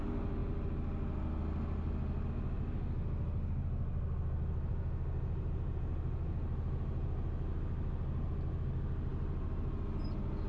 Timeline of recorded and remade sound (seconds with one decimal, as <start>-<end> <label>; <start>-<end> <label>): 0.0-10.5 recorded